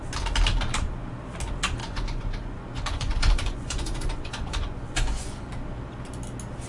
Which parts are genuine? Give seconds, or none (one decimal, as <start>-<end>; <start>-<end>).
0.0-1.8; 5.5-6.7